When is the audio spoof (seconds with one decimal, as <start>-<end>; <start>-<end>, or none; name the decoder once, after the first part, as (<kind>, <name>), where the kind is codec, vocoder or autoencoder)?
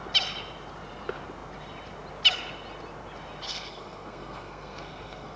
3.5-5.4 (codec, SNAC)